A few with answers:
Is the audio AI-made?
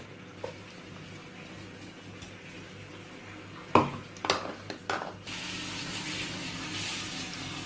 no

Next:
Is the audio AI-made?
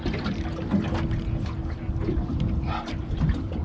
no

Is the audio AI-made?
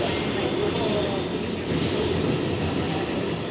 no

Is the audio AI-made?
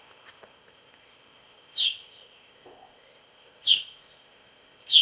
yes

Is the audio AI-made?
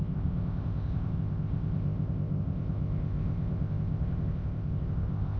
yes